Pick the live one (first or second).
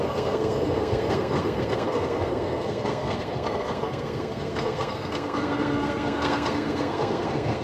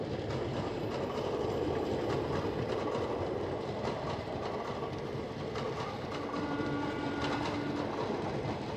second